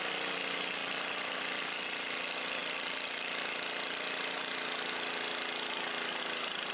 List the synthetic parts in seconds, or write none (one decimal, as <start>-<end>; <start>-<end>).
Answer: none